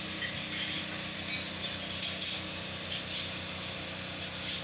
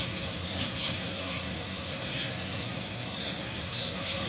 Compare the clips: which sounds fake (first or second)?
second